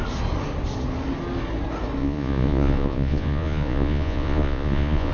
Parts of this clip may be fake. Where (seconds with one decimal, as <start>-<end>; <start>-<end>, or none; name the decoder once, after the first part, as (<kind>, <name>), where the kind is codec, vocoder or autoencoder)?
2.0-5.1 (vocoder, Vocos)